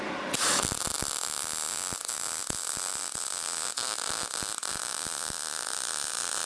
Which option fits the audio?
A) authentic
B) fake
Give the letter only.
A